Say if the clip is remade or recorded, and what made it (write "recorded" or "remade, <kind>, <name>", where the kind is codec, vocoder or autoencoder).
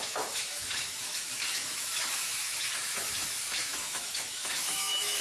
remade, autoencoder, DAC-VAE